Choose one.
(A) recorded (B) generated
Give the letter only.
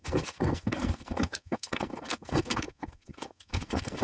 B